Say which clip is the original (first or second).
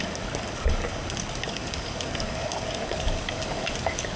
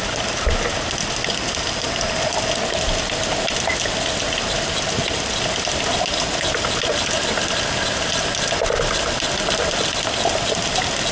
second